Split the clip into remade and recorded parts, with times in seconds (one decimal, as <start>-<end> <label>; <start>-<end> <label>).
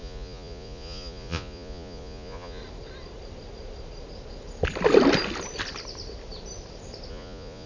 0.0-2.6 remade; 2.6-7.1 recorded; 7.1-7.7 remade